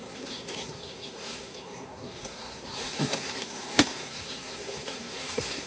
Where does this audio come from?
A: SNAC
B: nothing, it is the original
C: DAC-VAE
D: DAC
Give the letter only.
A